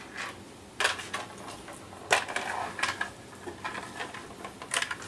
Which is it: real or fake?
real